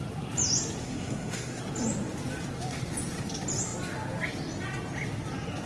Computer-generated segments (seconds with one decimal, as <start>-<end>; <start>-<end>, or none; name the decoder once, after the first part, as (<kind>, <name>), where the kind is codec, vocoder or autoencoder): 0.8-1.6 (codec, SNAC)